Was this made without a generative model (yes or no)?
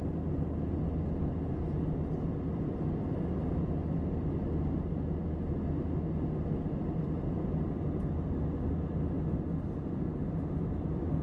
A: yes